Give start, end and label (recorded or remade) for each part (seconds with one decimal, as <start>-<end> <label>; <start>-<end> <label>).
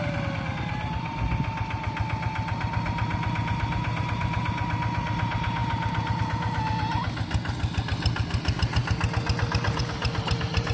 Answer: 0.0-10.7 recorded